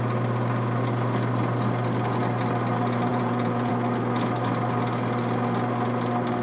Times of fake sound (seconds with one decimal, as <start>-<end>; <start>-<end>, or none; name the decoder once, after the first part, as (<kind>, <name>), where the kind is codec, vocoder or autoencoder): 3.1-3.7 (vocoder, Vocos)